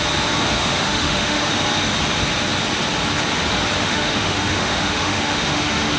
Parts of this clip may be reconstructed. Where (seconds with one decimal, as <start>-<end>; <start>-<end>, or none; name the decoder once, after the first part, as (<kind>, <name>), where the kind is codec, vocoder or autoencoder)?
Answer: 0.6-1.5 (autoencoder, DAC-VAE); 3.8-6.0